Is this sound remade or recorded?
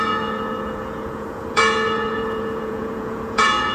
remade